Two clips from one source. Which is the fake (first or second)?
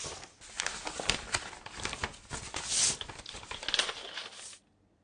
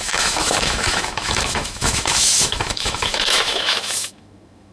second